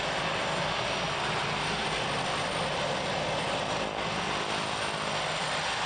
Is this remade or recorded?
recorded